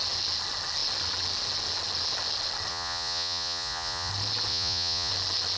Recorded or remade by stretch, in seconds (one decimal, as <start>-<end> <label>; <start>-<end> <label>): 0.0-2.7 recorded; 2.7-4.1 remade; 4.1-4.5 recorded; 4.5-5.1 remade; 5.1-5.6 recorded